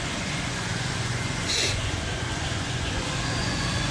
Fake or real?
fake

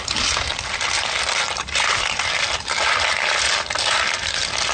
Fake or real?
real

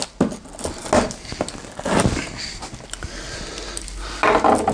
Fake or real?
real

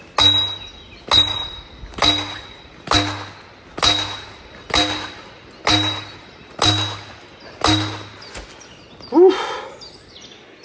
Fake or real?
real